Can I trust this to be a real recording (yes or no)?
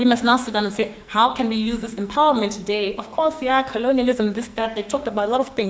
no